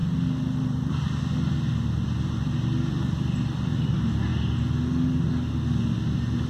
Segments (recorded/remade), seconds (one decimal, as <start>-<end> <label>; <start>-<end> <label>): 0.0-3.9 remade; 3.9-6.5 recorded